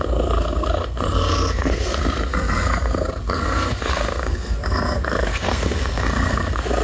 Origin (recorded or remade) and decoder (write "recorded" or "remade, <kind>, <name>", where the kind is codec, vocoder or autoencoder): remade, codec, SNAC